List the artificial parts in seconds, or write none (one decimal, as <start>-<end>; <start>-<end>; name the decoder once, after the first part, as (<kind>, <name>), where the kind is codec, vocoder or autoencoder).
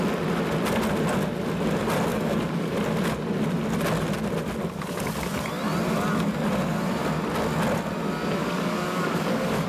2.1-2.7 (codec, DAC); 8.4-9.7